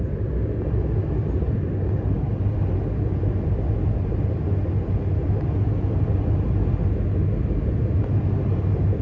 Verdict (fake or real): real